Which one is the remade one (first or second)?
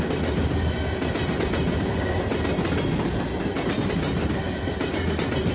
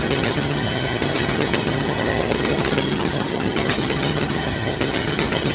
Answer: second